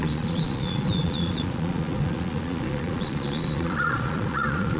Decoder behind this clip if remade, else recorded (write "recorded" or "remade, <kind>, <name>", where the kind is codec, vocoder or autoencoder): remade, vocoder, Vocos